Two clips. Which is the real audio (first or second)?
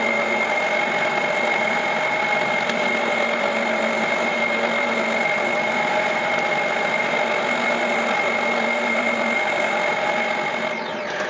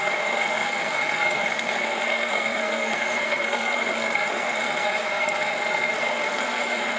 first